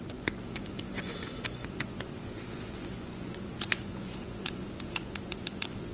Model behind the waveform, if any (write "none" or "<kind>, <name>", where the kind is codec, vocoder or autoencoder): vocoder, Vocos